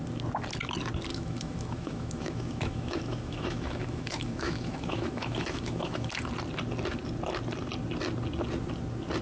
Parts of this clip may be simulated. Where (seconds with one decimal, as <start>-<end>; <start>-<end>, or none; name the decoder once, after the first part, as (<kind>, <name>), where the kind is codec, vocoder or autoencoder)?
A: 1.1-6.1 (autoencoder, DAC-VAE)